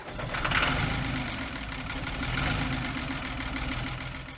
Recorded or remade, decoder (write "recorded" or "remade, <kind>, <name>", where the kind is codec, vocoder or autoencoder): recorded